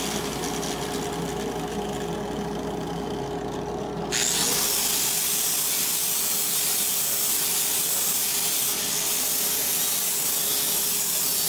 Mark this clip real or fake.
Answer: real